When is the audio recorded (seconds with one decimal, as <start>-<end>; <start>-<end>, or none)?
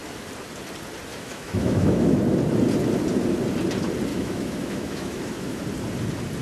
0.0-1.1; 2.2-4.1; 5.6-6.4